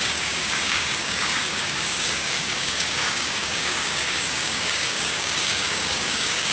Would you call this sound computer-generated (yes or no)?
yes